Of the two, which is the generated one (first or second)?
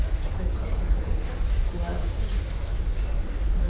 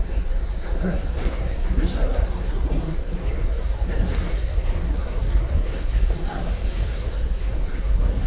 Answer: second